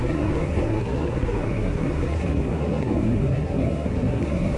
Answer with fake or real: fake